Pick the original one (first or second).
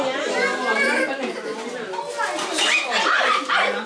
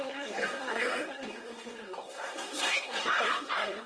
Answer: first